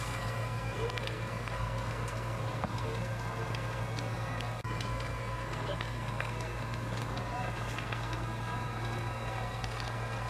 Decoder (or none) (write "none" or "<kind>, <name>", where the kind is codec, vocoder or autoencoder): codec, SNAC